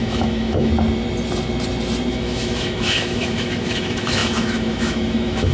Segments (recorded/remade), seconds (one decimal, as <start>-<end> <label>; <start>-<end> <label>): 0.0-0.7 remade; 0.7-2.1 recorded; 2.1-5.5 remade